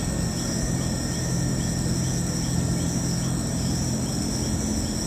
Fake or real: real